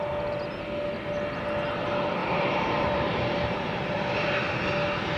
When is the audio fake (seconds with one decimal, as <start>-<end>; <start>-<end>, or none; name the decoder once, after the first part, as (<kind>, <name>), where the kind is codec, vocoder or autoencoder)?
2.2-4.3 (vocoder, BigVGAN v2)